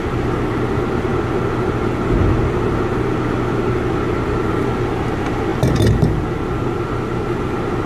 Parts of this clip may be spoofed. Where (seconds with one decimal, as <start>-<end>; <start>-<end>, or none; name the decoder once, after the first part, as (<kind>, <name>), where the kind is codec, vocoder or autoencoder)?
none